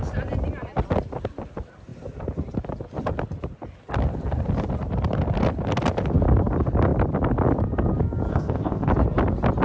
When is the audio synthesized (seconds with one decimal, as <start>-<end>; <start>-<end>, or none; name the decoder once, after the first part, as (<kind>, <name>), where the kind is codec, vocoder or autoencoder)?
8.3-8.9 (codec, ZipCodec)